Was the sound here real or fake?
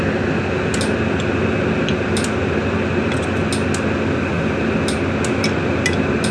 real